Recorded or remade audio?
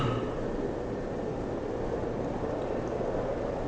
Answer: recorded